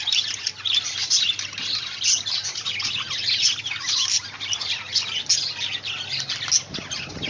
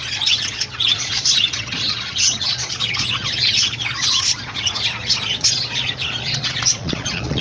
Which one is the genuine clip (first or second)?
first